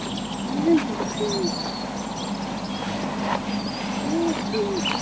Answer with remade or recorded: recorded